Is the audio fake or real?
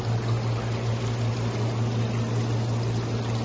real